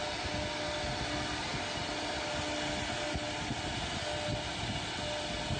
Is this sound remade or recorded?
recorded